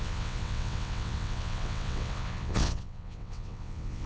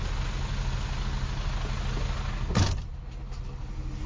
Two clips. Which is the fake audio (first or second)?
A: first